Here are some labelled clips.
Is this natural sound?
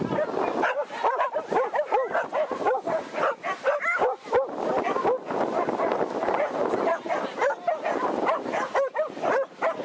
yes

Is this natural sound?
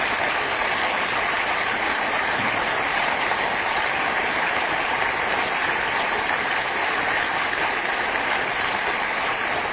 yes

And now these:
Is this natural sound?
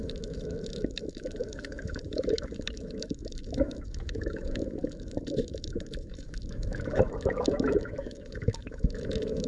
no